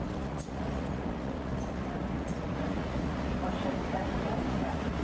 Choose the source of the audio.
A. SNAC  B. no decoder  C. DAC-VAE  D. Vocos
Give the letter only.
D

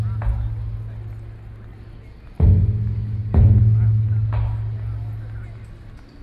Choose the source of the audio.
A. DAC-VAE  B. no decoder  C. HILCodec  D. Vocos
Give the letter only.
B